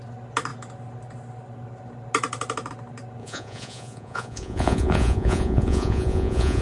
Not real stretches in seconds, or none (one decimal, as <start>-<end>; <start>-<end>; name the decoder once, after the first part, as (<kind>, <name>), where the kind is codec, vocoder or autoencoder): 3.2-6.6 (vocoder, Vocos)